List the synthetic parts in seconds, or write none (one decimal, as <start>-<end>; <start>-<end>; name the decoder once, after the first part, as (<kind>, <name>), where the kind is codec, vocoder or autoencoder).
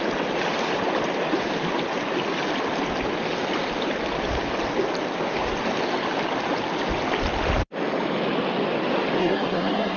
9.2-10.0 (codec, SNAC)